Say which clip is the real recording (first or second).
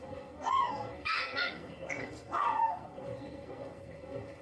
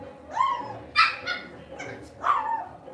second